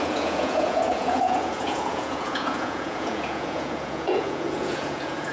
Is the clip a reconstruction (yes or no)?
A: yes